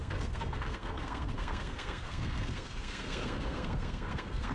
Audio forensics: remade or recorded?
remade